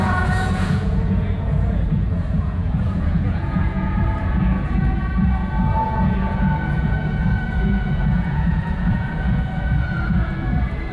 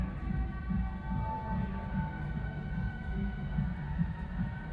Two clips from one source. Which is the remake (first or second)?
first